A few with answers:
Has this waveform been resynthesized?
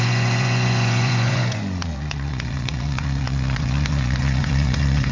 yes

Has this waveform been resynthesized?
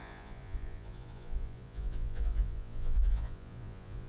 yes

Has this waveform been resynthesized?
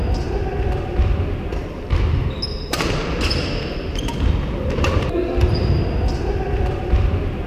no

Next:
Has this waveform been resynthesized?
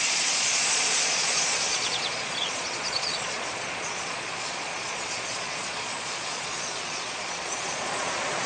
yes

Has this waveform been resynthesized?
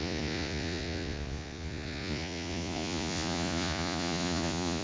yes